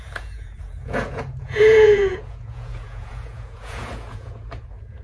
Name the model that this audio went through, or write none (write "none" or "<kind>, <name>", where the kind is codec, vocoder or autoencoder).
vocoder, Vocos